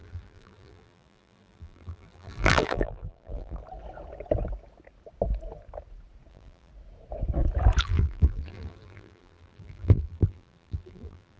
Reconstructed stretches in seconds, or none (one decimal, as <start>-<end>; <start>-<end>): 0.0-3.6; 6.3-6.7; 7.8-11.4